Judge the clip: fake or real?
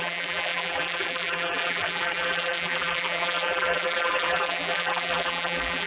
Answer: fake